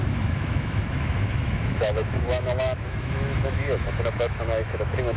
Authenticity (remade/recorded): remade